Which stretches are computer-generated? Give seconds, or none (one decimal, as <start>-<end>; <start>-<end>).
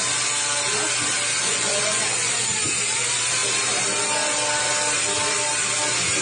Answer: 1.4-2.3